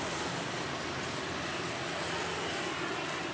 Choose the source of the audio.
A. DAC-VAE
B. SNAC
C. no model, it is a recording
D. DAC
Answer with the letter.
C